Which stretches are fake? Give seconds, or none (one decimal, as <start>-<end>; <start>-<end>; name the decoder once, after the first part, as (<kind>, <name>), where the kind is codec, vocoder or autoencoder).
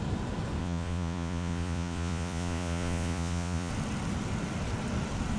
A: 0.6-3.7 (vocoder, Vocos)